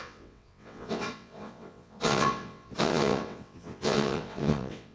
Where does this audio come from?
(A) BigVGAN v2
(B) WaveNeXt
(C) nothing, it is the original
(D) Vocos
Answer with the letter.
B